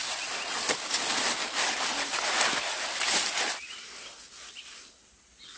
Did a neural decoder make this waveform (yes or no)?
no